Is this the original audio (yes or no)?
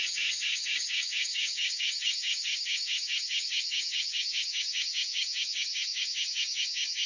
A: no